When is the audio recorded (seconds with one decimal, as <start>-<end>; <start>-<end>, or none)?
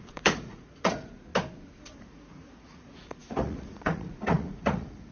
1.3-1.8